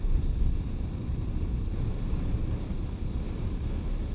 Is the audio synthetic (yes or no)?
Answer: no